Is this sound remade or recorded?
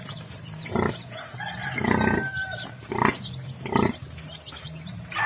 remade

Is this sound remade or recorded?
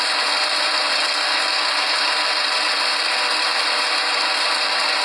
remade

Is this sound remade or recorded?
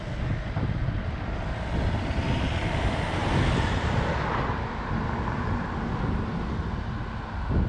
recorded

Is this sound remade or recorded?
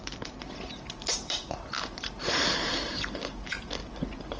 remade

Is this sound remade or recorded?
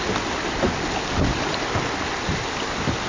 remade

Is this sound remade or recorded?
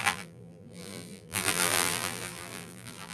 remade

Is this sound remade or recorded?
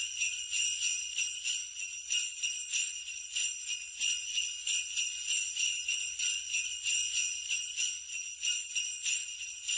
recorded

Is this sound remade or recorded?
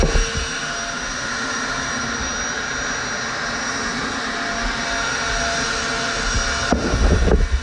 recorded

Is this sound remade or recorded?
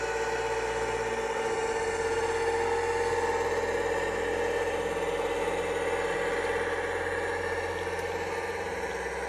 recorded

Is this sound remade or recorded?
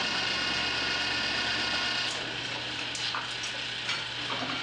recorded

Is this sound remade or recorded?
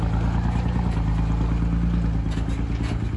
recorded